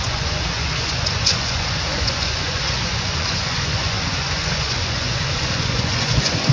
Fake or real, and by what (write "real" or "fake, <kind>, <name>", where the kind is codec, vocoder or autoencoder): fake, vocoder, Vocos